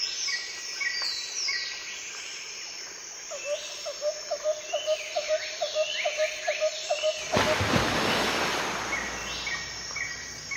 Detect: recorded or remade recorded